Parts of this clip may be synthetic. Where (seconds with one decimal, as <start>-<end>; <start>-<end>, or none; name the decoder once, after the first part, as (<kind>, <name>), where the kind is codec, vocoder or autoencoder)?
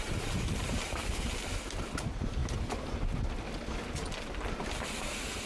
0.0-2.4 (vocoder, BigVGAN v2)